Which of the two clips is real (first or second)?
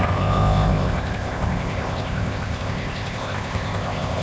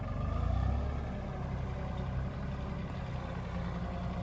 second